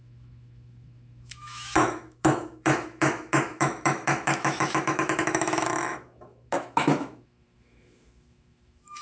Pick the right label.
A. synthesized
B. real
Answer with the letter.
A